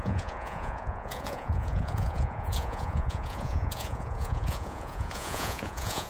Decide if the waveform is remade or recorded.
remade